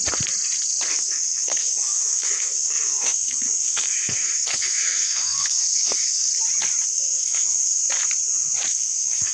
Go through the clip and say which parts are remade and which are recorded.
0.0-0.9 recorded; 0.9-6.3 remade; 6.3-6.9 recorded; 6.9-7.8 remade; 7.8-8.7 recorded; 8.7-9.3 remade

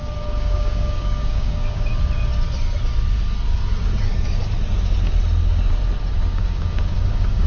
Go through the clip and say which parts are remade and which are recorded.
0.0-1.9 remade; 1.9-6.3 recorded; 6.3-7.5 remade

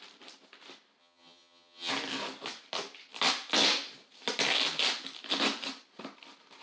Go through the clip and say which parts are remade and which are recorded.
0.0-1.0 recorded; 1.0-1.9 remade; 1.9-6.6 recorded

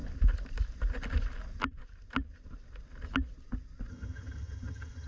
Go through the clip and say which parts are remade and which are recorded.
0.0-3.9 recorded; 3.9-5.1 remade

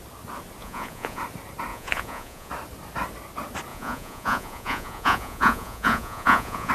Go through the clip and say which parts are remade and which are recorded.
0.0-0.6 recorded; 0.6-1.2 remade; 1.2-1.7 recorded; 1.7-2.5 remade; 2.5-3.7 recorded; 3.7-6.7 remade

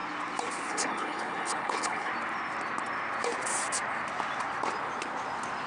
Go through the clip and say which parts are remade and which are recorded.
0.0-0.7 recorded; 0.7-2.1 remade; 2.1-5.7 recorded